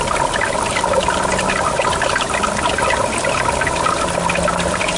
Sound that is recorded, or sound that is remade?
recorded